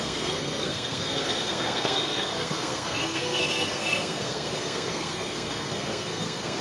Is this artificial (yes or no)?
yes